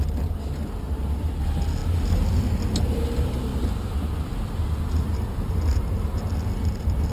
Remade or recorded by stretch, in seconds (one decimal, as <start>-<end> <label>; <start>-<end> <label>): 0.0-7.1 recorded